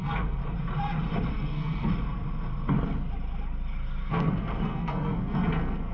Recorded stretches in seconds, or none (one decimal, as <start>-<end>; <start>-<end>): 0.4-1.3; 1.9-4.1

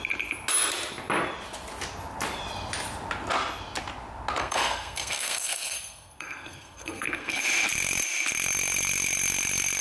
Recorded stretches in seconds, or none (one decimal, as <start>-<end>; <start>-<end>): 0.0-4.4; 7.4-9.8

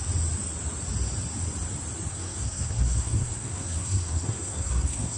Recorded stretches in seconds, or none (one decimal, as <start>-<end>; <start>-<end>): 0.0-2.1

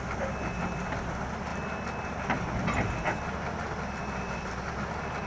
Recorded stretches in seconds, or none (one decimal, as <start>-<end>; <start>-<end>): 0.0-5.3

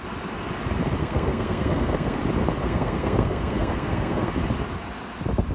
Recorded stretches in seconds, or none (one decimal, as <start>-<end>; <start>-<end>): 0.0-1.0; 2.2-2.6; 4.3-5.5

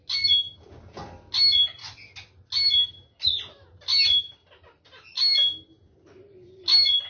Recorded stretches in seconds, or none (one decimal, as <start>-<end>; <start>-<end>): 0.0-7.1

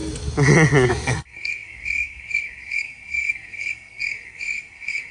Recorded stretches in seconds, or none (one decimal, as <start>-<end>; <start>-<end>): 0.0-0.9

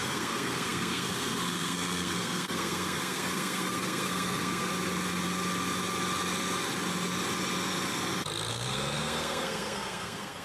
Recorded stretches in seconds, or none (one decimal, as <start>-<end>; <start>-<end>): 4.7-8.5